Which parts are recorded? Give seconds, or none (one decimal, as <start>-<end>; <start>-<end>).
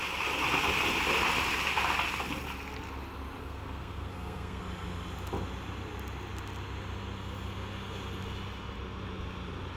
0.0-3.4; 4.6-9.8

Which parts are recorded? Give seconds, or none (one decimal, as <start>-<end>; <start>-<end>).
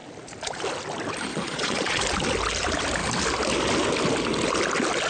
0.0-1.3; 2.0-5.1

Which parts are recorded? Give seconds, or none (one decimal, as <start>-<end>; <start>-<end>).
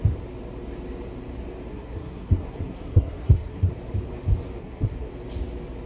0.0-1.7; 3.7-4.6; 5.1-5.9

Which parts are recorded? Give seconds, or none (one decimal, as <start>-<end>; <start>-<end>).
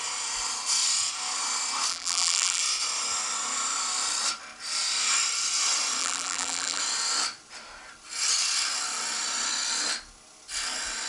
0.0-1.9; 2.6-6.0; 6.8-11.1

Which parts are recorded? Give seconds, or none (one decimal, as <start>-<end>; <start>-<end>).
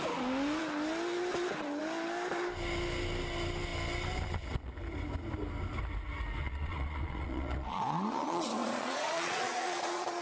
0.0-6.4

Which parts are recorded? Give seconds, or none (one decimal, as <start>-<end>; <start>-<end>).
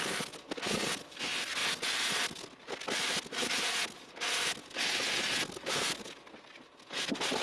0.0-7.4